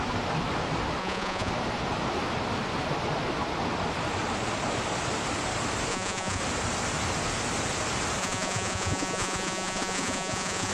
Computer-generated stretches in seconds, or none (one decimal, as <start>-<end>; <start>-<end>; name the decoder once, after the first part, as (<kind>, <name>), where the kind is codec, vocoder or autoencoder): 1.0-1.5 (vocoder, Vocos); 5.9-6.4; 8.2-10.7